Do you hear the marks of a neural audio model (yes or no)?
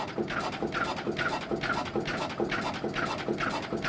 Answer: no